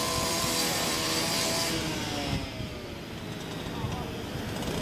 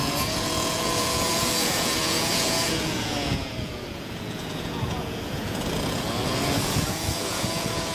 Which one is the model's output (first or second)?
second